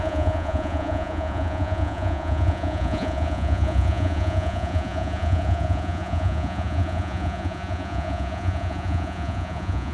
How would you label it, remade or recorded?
remade